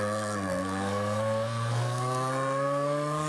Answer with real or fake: fake